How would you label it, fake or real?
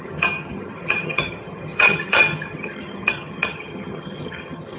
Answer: fake